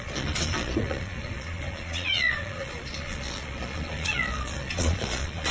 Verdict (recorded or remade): remade